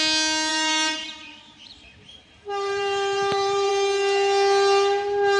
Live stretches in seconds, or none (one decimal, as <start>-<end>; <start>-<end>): 0.0-0.5; 3.7-5.4